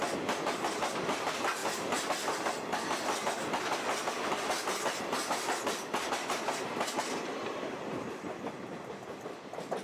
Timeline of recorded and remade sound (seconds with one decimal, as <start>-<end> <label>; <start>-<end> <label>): 0.0-9.8 recorded